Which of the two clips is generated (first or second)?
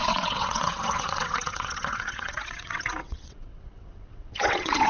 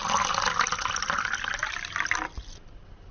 first